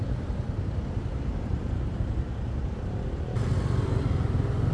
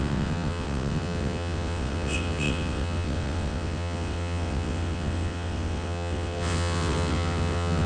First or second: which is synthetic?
second